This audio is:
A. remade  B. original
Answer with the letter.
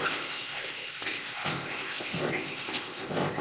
A